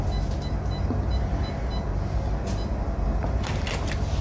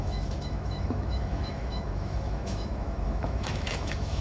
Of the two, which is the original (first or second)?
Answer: first